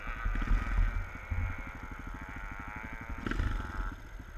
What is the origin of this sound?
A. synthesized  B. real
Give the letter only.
B